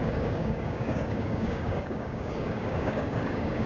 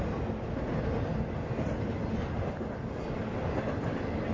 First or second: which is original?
second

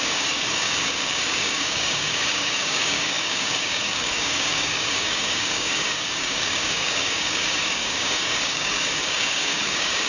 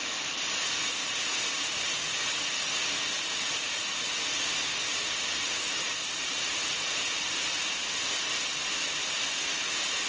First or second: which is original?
second